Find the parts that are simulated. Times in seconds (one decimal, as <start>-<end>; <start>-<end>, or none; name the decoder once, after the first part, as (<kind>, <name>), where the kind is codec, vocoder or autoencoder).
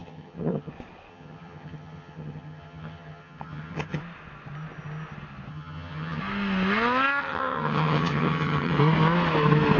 0.0-0.7 (vocoder, HiFi-GAN); 1.1-4.0; 5.5-6.2; 7.2-8.8